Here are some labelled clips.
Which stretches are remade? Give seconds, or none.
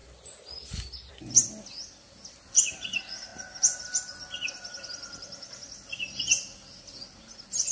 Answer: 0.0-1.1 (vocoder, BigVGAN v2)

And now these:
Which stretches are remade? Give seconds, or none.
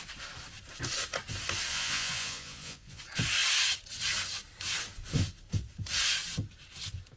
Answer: 1.7-3.0 (vocoder, Vocos)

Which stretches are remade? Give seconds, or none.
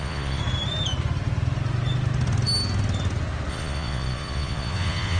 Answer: 0.0-0.4 (vocoder, Vocos); 3.5-5.2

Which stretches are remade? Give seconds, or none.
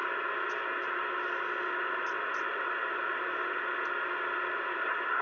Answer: none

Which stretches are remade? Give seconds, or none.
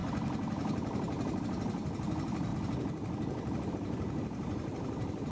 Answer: 2.5-3.7 (vocoder, BigVGAN v2)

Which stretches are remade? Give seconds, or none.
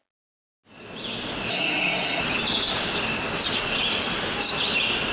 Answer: 1.5-2.2 (codec, SNAC)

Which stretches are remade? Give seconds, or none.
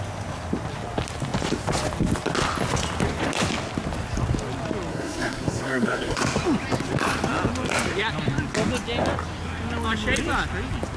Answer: 4.9-6.2 (codec, SNAC)